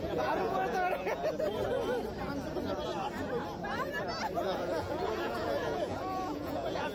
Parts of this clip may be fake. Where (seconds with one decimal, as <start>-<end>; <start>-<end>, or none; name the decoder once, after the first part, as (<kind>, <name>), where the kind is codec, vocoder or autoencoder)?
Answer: 0.0-1.2 (vocoder, Vocos); 4.4-6.9